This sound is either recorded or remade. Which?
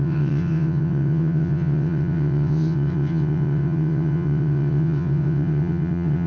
remade